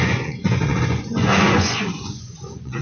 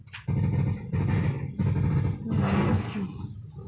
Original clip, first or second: second